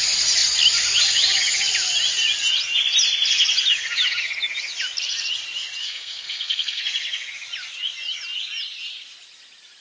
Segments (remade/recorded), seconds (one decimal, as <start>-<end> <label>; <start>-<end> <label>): 0.0-5.8 recorded; 5.8-6.8 remade; 6.8-9.8 recorded